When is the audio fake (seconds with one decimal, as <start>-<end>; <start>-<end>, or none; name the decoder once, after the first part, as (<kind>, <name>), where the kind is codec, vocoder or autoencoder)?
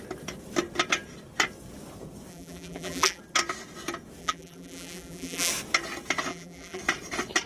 2.3-3.2 (vocoder, BigVGAN v2); 4.2-5.5; 6.3-6.8